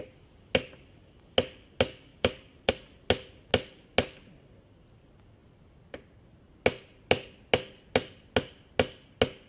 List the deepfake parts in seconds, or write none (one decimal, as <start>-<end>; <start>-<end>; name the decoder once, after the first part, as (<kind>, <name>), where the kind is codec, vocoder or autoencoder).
2.1-2.7 (vocoder, BigVGAN v2)